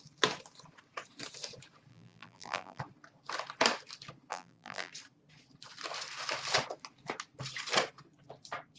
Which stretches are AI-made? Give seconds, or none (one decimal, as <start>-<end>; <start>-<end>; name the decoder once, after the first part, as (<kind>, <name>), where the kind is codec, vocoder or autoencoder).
1.9-2.8 (vocoder, BigVGAN v2); 4.3-4.9